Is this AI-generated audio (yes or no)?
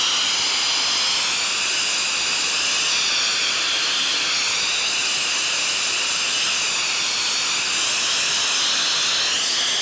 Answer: no